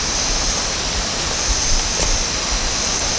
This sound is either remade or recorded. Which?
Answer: recorded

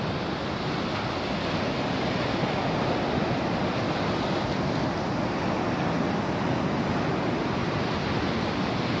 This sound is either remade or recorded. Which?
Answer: recorded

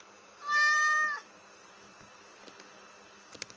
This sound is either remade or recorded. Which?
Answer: recorded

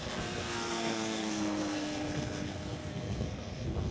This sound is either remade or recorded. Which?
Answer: remade